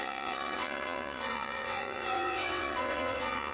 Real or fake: fake